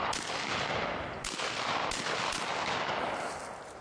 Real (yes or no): yes